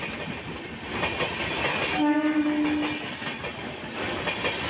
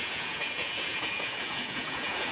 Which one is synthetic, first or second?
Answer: second